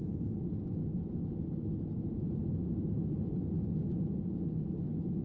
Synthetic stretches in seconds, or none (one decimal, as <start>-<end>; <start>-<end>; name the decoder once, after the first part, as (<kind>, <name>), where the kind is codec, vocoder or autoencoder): none